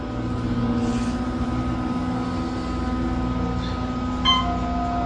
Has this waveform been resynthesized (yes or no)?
no